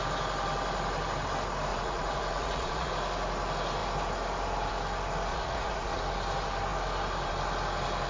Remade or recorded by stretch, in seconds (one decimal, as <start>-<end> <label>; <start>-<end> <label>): 0.0-1.7 recorded; 1.7-2.9 remade; 2.9-5.3 recorded; 5.3-6.0 remade; 6.0-8.1 recorded

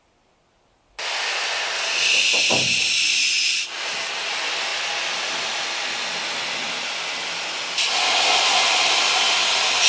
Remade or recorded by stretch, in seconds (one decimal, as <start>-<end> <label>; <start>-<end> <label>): 0.0-9.9 recorded

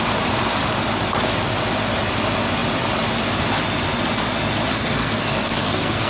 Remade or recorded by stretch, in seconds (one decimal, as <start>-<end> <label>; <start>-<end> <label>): 0.0-4.7 recorded; 4.7-6.1 remade

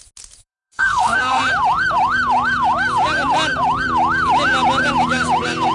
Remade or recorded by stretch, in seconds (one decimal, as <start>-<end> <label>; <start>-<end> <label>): 0.0-0.4 recorded; 0.4-1.4 remade; 1.4-5.7 recorded

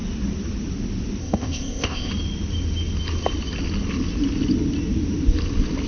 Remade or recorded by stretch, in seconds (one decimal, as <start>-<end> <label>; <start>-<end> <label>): 0.0-1.2 recorded; 1.2-2.1 remade; 2.1-5.9 recorded

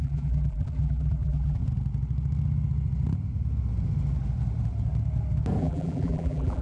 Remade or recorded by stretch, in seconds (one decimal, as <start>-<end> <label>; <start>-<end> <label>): 0.0-1.6 remade; 1.6-5.6 recorded; 5.6-6.6 remade

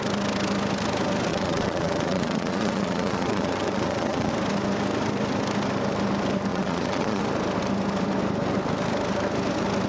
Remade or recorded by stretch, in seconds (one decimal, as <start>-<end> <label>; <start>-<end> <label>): 0.0-1.3 recorded; 1.3-4.3 remade; 4.3-6.5 recorded; 6.5-7.2 remade; 7.2-9.9 recorded

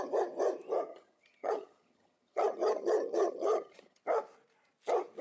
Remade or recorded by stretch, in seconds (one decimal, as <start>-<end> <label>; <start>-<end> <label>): 0.0-0.9 recorded; 0.9-4.0 remade; 4.0-5.2 recorded